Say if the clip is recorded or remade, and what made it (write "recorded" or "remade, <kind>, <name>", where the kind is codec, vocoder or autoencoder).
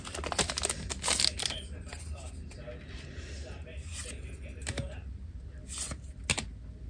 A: recorded